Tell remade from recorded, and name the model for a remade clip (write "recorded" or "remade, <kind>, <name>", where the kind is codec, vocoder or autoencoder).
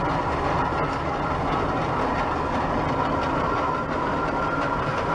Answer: recorded